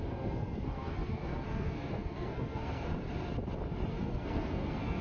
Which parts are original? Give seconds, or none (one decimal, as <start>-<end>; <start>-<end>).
2.9-3.9